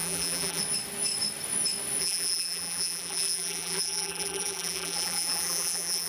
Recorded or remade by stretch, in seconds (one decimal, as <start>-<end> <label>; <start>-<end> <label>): 0.0-0.6 remade; 0.6-2.0 recorded; 2.0-6.1 remade